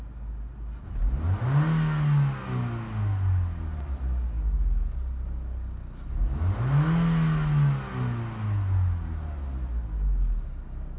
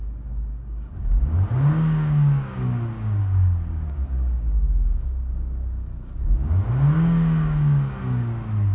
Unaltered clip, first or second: first